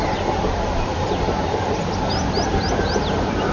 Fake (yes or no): no